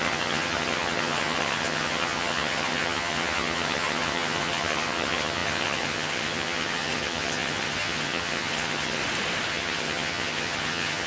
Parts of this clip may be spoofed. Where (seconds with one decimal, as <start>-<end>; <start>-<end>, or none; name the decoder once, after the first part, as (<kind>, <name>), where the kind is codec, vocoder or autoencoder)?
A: 0.0-9.0 (vocoder, HiFi-GAN); 9.5-11.1

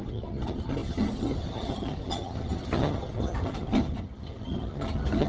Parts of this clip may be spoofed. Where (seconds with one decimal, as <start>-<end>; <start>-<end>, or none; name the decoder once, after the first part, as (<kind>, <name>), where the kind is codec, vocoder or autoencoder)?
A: 0.0-5.3 (vocoder, HiFi-GAN)

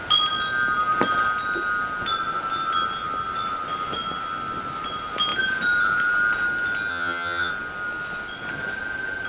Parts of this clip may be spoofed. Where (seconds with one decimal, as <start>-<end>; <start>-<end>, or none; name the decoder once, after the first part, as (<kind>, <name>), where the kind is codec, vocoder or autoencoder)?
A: 6.9-7.5 (vocoder, HiFi-GAN)

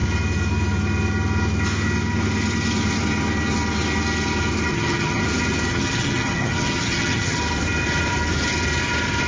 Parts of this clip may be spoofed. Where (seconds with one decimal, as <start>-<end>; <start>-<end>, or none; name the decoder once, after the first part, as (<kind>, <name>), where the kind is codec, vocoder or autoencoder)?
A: 4.7-5.2 (vocoder, HiFi-GAN); 5.7-7.4

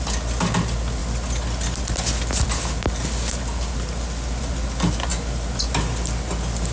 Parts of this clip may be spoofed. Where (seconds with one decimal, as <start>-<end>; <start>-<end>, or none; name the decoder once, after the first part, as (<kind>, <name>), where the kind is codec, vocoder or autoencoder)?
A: none